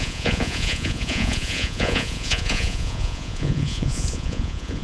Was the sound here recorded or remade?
remade